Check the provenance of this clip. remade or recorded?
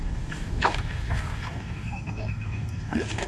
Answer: remade